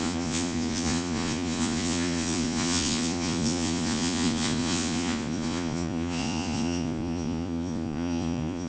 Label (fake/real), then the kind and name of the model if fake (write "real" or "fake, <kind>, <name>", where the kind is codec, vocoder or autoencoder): fake, vocoder, Vocos